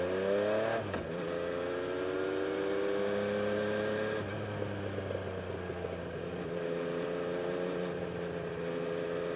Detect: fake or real real